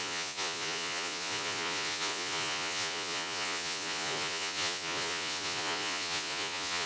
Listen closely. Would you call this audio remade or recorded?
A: remade